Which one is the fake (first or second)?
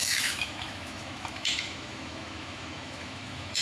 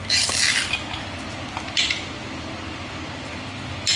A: first